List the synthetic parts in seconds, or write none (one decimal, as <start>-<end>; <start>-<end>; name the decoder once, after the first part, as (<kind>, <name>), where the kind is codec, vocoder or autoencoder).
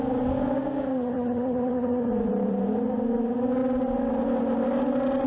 0.9-2.1 (vocoder, HiFi-GAN)